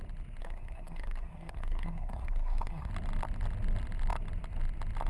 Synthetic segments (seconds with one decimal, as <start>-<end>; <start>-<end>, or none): 0.4-2.9